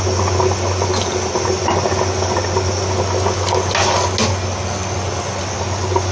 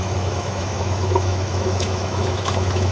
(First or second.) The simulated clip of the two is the second